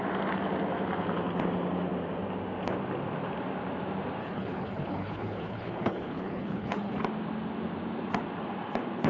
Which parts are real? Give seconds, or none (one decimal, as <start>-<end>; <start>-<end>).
0.0-4.2; 7.0-9.1